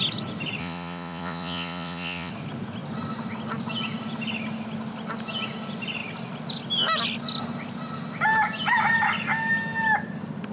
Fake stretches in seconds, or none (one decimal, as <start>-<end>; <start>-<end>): 0.6-2.3